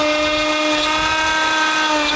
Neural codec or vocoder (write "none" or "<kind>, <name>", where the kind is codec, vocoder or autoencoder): none